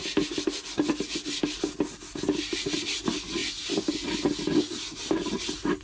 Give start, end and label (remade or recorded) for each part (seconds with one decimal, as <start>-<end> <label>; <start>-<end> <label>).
0.0-5.8 recorded